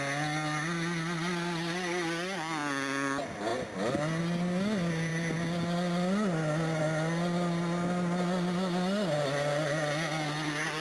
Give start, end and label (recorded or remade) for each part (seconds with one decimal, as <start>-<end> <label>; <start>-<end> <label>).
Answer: 0.0-10.8 recorded